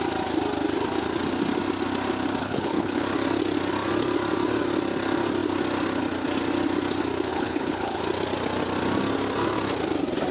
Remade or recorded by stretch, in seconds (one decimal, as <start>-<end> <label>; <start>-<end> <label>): 0.0-2.4 recorded; 2.4-3.0 remade; 3.0-7.3 recorded; 7.3-8.0 remade; 8.0-10.3 recorded